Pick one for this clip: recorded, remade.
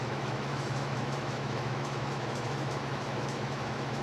remade